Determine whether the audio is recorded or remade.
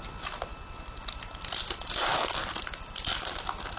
recorded